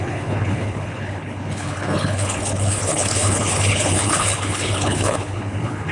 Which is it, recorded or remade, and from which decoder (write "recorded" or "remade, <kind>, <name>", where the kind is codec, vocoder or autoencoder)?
remade, codec, HILCodec